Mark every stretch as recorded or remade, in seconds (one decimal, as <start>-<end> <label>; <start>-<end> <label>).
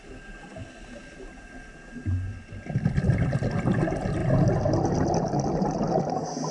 0.0-6.5 recorded